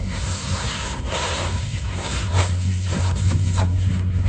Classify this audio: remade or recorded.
remade